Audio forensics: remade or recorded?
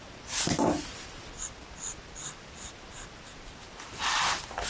recorded